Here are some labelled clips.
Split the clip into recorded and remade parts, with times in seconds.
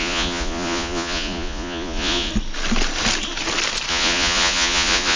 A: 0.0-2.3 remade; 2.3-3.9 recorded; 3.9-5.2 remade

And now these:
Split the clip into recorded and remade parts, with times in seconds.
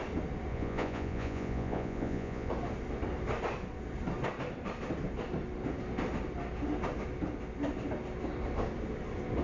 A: 0.0-0.5 recorded; 0.5-2.5 remade; 2.5-9.4 recorded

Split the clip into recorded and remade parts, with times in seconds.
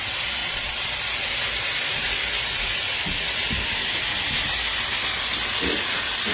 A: 0.0-0.4 recorded; 0.4-0.9 remade; 0.9-6.3 recorded